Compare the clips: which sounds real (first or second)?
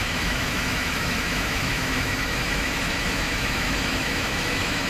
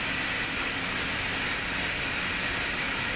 second